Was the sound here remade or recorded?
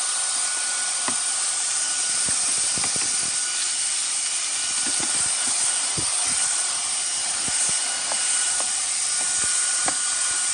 recorded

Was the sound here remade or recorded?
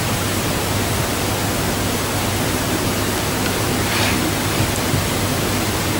recorded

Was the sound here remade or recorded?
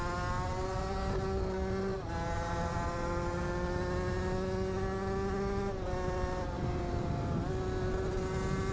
recorded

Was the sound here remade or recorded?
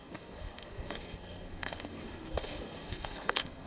remade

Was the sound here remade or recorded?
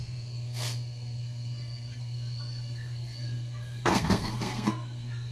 remade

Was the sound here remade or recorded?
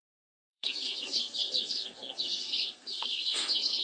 remade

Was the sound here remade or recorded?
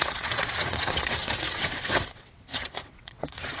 remade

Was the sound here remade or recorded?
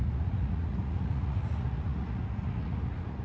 remade